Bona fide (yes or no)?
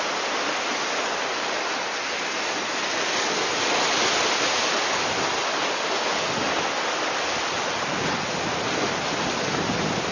yes